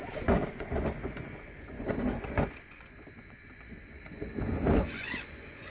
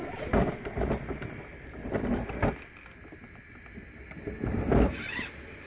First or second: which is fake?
first